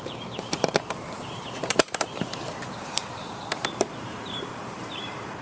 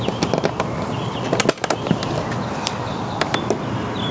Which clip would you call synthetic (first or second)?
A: first